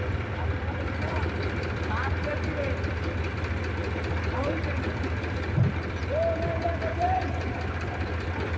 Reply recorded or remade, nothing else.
remade